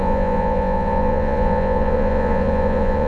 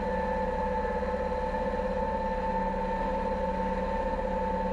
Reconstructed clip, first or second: first